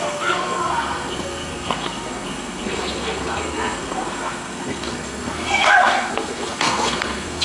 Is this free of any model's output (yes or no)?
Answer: no